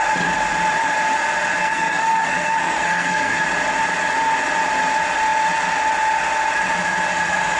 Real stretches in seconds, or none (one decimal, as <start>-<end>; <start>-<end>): 0.0-1.6; 3.4-7.6